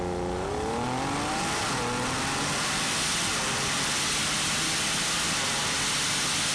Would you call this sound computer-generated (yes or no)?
no